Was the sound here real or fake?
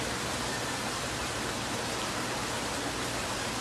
real